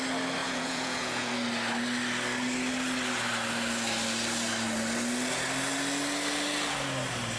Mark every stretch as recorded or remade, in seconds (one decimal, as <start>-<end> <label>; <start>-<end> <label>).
0.0-0.4 recorded; 0.4-1.3 remade; 1.3-7.4 recorded